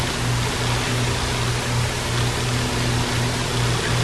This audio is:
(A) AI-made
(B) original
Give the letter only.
B